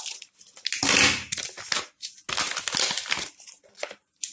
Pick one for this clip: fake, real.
real